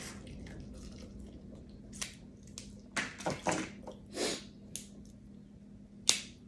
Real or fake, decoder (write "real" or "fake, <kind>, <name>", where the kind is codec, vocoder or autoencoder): real